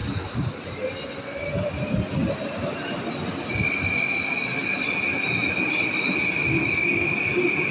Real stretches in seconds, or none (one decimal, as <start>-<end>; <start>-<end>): 0.6-6.6; 7.3-7.7